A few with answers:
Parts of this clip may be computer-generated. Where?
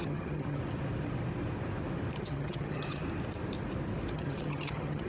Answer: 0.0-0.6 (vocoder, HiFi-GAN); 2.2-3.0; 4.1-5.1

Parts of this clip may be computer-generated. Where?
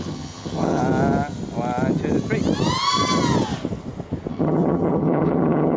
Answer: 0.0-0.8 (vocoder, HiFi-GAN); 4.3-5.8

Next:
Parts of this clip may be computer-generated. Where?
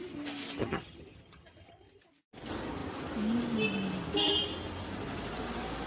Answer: 0.6-2.0 (vocoder, HiFi-GAN)